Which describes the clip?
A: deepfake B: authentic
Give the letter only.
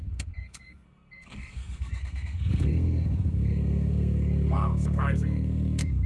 A